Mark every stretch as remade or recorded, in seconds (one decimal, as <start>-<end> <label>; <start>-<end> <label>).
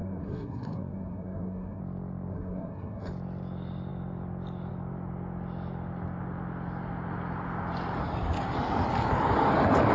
0.0-1.8 remade; 1.8-2.3 recorded; 2.3-3.1 remade; 3.1-9.9 recorded